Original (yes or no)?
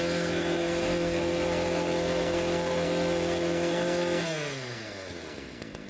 no